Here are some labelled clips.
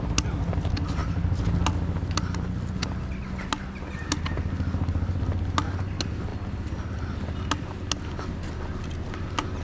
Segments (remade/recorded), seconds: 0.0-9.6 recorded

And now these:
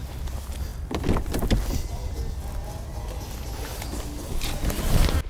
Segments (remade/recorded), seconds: 0.0-5.3 recorded

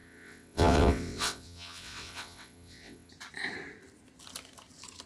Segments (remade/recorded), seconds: 0.0-3.1 remade; 3.1-5.1 recorded

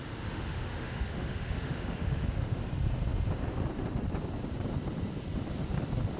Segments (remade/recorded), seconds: 0.0-2.6 remade; 2.6-6.2 recorded

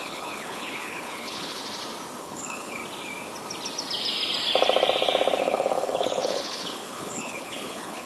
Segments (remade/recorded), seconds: 0.0-1.6 remade; 1.6-2.2 recorded; 2.2-2.8 remade; 2.8-5.4 recorded; 5.4-8.1 remade

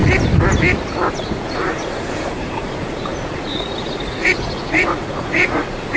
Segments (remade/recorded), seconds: 0.0-1.1 recorded; 1.1-6.0 remade